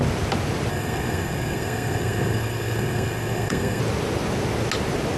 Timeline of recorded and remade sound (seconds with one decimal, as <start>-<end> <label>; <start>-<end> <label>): 0.0-0.7 recorded; 0.7-3.8 remade; 3.8-5.2 recorded